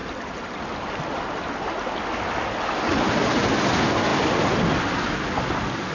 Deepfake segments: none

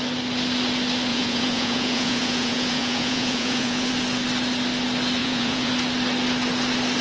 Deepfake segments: 1.1-3.9 (vocoder, Vocos); 5.2-5.7

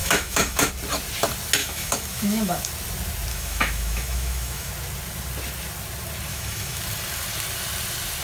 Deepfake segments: 0.0-0.7 (autoencoder, DAC-VAE); 1.6-2.7; 3.3-4.7; 6.3-6.8

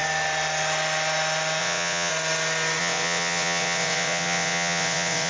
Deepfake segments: 1.6-2.1 (vocoder, WaveNeXt); 2.8-5.3

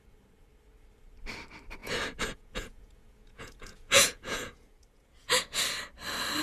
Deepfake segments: 1.8-5.6 (vocoder, Vocos)

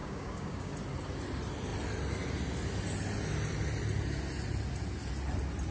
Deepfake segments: 0.0-0.7 (codec, DAC)

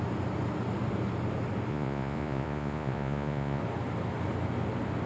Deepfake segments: 1.7-3.6 (vocoder, Vocos)

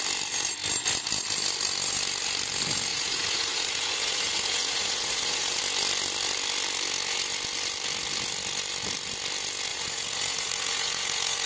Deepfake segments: 2.9-5.6 (vocoder, Vocos); 9.7-11.5